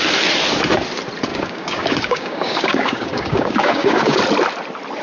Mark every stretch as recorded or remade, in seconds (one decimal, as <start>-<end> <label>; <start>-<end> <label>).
0.0-1.3 recorded; 1.3-4.2 remade; 4.2-5.0 recorded